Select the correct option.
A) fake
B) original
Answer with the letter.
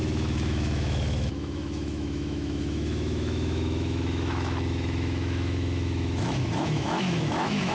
A